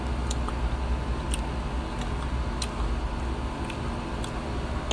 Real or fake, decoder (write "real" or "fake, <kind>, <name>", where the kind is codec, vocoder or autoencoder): real